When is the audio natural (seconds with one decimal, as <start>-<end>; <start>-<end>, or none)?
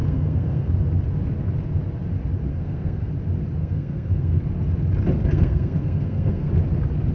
0.7-2.5; 3.1-3.6; 4.4-5.2; 6.5-7.1